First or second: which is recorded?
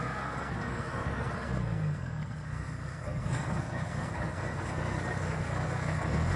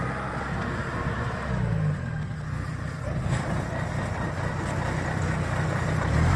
second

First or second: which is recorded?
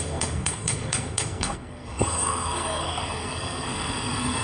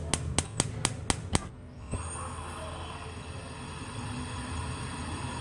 second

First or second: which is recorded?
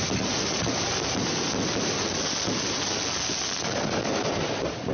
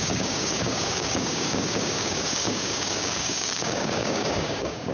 first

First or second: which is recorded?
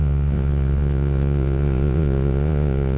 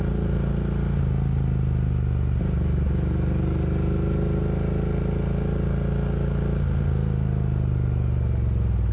second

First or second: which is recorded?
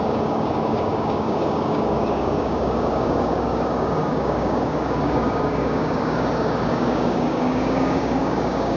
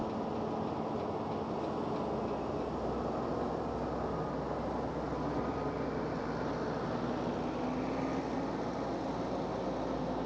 second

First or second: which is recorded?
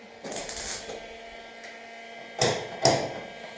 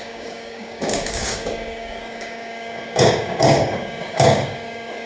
first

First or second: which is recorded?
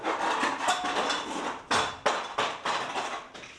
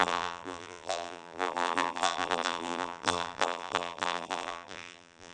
first